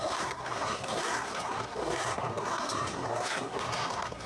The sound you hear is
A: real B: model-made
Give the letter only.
B